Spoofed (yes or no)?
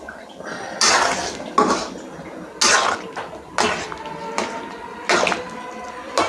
no